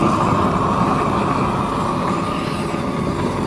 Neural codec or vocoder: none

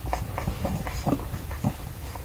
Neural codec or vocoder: none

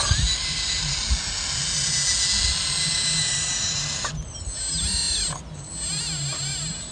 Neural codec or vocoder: none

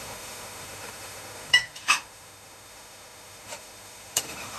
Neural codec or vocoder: autoencoder, DAC-VAE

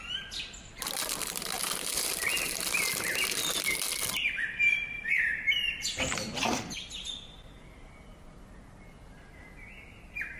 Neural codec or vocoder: none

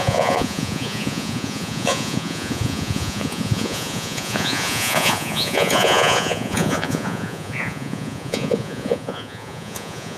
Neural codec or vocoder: vocoder, Vocos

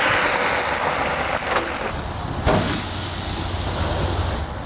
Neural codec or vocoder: none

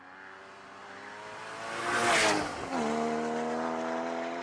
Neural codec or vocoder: none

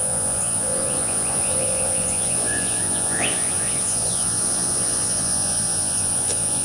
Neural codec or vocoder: vocoder, Vocos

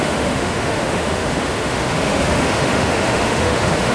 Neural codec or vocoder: autoencoder, DAC-VAE